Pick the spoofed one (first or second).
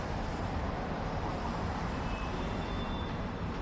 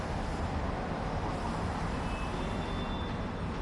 first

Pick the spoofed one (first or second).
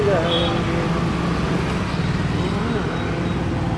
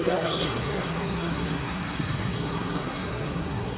second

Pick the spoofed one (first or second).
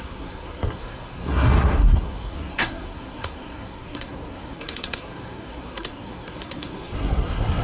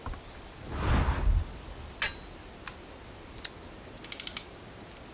first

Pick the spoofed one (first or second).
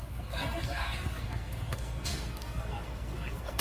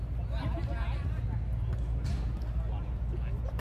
first